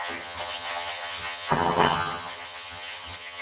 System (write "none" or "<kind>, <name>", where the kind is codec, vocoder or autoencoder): vocoder, HiFi-GAN